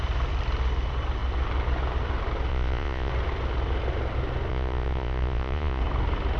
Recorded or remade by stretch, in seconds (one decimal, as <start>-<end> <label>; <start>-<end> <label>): 0.0-2.5 recorded; 2.5-3.1 remade; 3.1-4.5 recorded; 4.5-5.8 remade; 5.8-6.4 recorded